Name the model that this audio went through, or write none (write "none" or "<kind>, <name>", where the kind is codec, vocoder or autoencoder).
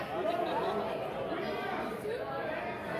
vocoder, BigVGAN v2